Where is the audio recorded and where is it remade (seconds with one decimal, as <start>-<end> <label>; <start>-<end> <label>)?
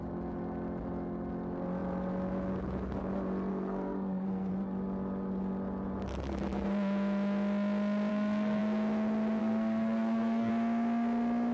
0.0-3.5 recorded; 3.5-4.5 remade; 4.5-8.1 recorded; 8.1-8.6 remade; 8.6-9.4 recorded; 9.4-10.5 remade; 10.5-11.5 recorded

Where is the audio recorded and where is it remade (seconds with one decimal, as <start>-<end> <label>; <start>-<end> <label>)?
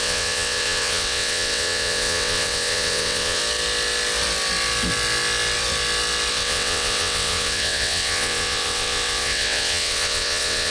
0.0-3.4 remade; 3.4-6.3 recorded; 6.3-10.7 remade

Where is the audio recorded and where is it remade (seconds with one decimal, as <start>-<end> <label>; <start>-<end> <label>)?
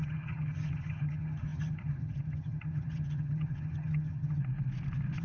0.0-4.4 remade; 4.4-5.2 recorded